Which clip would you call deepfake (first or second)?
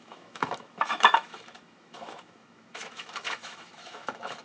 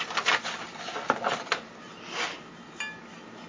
first